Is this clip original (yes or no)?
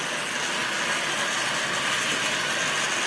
yes